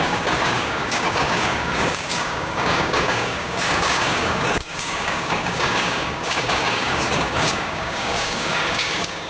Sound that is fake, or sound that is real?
fake